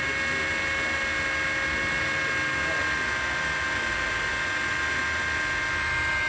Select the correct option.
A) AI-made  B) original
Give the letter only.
B